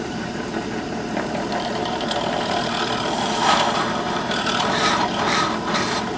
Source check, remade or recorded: remade